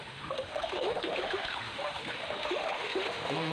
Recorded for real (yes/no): no